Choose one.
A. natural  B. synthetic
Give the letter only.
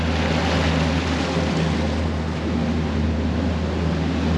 A